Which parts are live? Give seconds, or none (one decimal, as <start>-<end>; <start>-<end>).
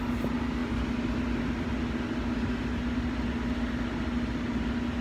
0.0-5.0